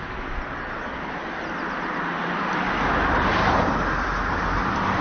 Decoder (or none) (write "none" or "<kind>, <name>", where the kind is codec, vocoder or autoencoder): none